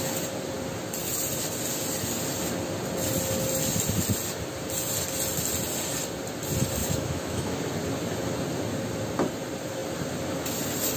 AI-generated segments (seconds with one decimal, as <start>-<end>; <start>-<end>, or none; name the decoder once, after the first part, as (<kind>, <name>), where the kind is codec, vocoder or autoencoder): 6.8-7.6 (autoencoder, DAC-VAE)